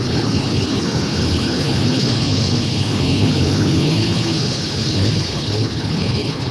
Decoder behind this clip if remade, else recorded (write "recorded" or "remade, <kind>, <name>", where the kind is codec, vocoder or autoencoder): remade, codec, HILCodec